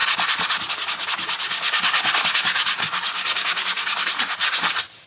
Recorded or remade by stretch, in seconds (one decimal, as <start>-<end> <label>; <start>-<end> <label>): 0.0-1.5 recorded; 1.5-4.1 remade; 4.1-5.1 recorded